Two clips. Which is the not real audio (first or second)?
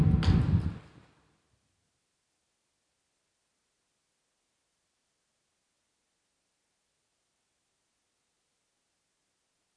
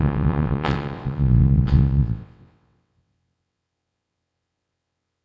second